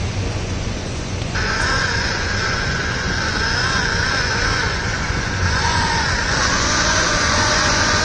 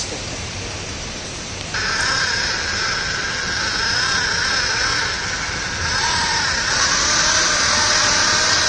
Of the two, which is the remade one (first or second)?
first